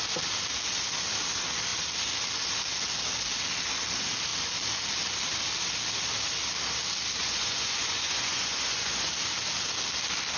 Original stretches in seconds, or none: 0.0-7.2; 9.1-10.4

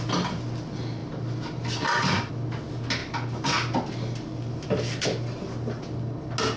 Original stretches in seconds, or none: 0.0-6.6

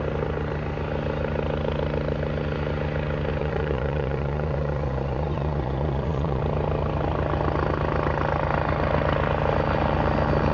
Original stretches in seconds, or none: 0.0-3.4; 6.4-10.5

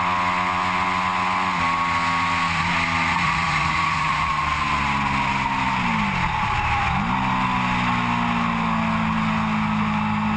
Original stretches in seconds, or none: 0.0-3.1; 4.3-10.4

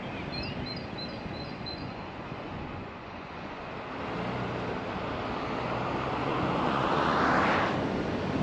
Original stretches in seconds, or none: 0.0-1.1; 3.7-6.2; 7.2-8.4

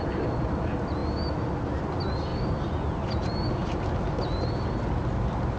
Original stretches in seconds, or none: 0.0-5.6

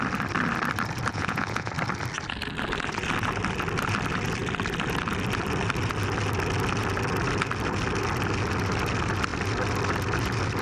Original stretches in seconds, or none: 0.0-1.1; 1.7-10.6